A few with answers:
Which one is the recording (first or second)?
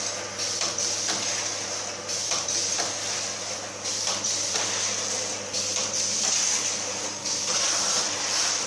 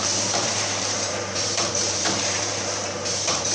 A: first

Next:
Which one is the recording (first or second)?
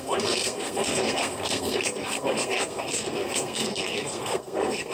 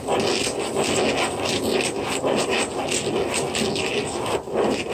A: second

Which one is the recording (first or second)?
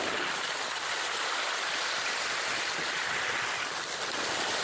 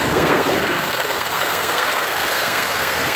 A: first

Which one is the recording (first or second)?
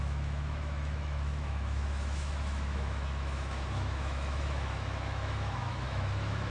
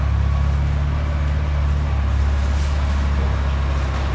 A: second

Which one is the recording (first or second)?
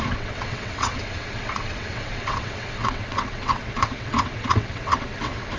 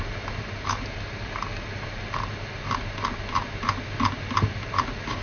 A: second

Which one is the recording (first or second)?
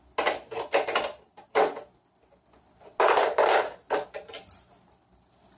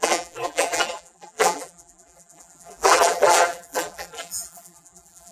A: first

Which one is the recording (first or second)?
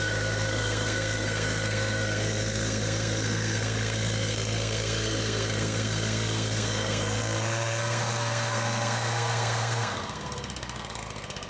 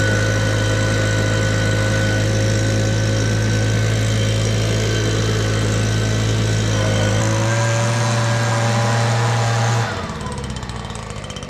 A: second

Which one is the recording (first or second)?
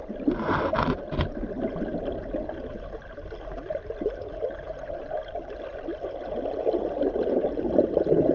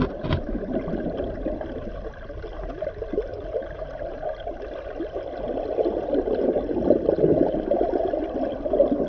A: first